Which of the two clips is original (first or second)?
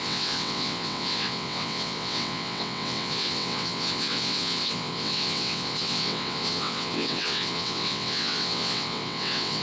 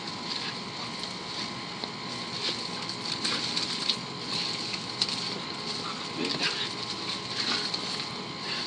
second